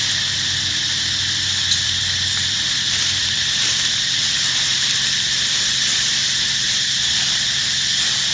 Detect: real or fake fake